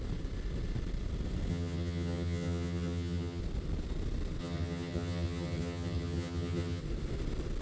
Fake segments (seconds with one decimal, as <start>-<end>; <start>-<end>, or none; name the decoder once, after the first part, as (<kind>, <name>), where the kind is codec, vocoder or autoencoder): 1.5-3.4 (vocoder, HiFi-GAN); 4.4-6.8